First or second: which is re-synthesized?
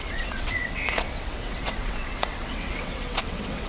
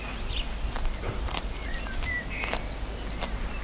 first